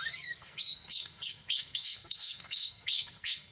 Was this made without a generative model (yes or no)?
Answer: no